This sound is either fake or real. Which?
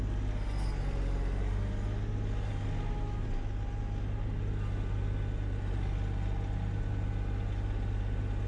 real